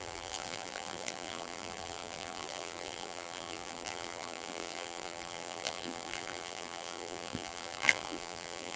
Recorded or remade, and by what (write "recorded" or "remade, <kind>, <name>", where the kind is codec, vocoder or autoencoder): remade, vocoder, BigVGAN v2